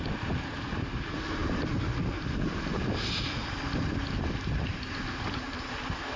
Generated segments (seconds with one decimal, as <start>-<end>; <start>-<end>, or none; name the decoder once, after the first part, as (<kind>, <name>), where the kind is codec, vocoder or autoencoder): none